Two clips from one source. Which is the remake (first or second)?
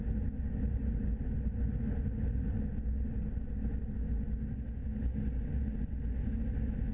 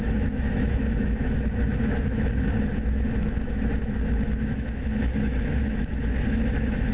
second